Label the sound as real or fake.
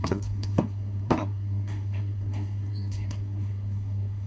fake